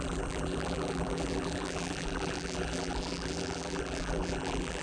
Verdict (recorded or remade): remade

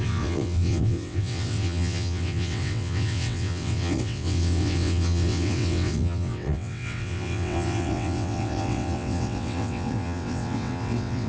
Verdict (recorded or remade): remade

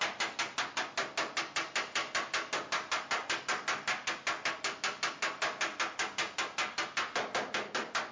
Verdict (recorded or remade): recorded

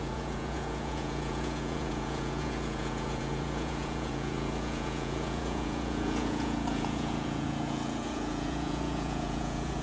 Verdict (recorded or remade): remade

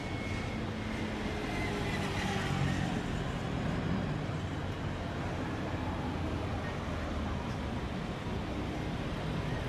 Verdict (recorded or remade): recorded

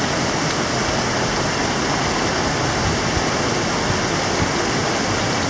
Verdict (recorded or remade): recorded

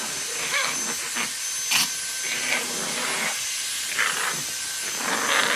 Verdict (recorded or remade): recorded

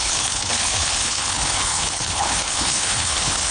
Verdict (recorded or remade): remade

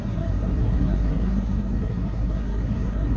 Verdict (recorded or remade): remade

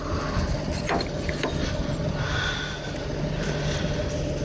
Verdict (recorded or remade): recorded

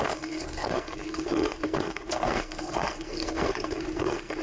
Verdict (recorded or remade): remade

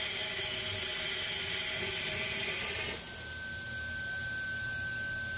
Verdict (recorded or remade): recorded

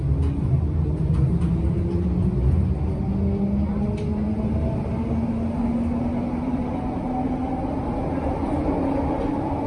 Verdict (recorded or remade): recorded